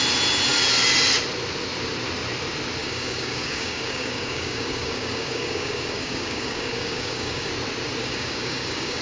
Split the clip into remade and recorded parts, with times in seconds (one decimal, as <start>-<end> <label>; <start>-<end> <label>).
0.0-2.8 recorded; 2.8-7.5 remade; 7.5-8.0 recorded; 8.0-9.0 remade